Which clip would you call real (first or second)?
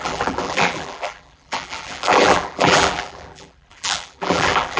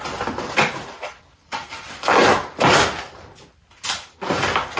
second